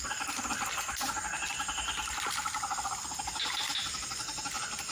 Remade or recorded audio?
recorded